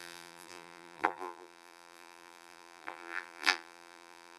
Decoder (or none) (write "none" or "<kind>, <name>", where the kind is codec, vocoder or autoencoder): vocoder, BigVGAN v2